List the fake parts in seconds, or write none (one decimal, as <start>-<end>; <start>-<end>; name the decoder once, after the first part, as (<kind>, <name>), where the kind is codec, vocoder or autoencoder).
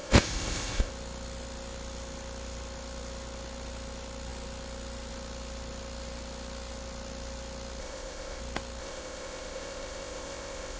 0.0-0.9 (codec, ZipCodec); 7.8-8.4; 8.8-10.8